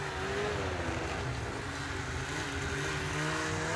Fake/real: real